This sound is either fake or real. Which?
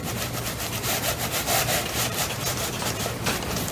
fake